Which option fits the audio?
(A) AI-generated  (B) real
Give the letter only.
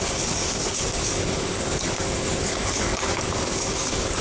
A